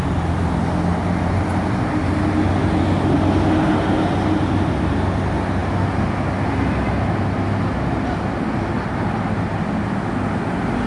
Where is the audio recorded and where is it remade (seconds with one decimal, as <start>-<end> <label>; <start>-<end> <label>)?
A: 0.0-10.9 recorded